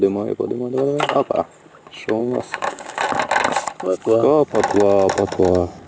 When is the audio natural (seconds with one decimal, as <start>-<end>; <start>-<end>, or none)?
0.0-2.2; 3.0-5.9